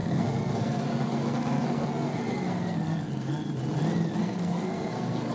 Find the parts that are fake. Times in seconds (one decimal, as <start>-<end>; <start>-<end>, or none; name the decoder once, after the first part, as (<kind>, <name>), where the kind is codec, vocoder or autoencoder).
0.0-3.6 (codec, SNAC); 4.2-5.3

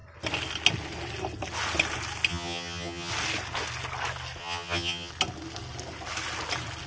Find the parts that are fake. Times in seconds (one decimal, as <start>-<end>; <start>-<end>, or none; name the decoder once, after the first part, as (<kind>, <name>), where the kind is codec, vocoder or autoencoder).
2.3-3.1 (vocoder, HiFi-GAN); 4.4-5.1

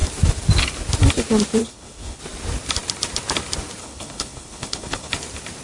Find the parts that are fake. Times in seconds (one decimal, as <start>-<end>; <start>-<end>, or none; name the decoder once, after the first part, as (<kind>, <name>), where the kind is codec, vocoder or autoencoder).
1.6-2.2 (codec, HILCodec); 3.8-5.1

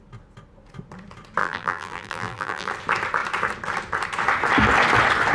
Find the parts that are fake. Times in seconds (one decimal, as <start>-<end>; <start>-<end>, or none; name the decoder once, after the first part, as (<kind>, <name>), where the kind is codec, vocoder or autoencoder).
1.4-2.7 (vocoder, BigVGAN v2)

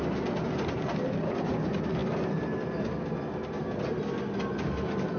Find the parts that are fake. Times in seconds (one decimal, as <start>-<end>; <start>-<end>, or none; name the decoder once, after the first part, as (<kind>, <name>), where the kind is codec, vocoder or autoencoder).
none

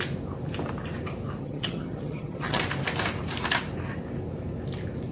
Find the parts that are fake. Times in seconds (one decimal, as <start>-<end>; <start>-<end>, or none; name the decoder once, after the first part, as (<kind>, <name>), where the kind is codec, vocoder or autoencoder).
1.4-2.6 (vocoder, HiFi-GAN)

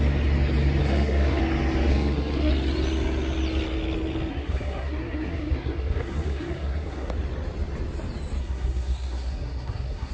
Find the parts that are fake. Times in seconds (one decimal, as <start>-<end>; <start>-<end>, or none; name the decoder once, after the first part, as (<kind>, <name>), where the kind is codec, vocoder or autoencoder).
0.8-1.4 (codec, SNAC); 1.9-2.5; 4.3-7.1; 8.4-10.1